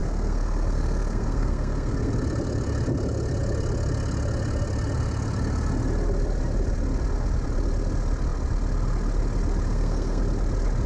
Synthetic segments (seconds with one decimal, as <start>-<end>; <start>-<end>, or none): 0.0-2.1; 9.7-10.2